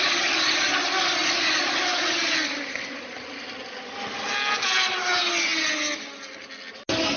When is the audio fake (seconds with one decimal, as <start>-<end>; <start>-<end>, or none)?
none